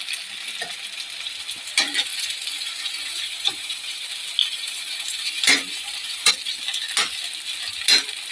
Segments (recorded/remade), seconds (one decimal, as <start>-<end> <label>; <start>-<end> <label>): 0.0-2.1 recorded; 2.1-4.0 remade; 4.0-4.4 recorded; 4.4-6.3 remade; 6.3-8.3 recorded